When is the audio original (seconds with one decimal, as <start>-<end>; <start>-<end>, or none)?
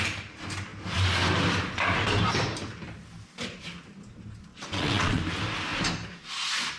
0.0-4.5; 5.2-6.8